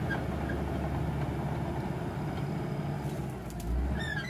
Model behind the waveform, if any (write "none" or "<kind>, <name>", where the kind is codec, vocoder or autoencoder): none